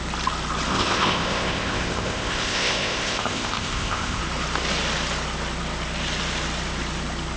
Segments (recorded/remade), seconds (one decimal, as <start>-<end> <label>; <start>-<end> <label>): 0.0-0.7 recorded; 0.7-4.2 remade; 4.2-7.4 recorded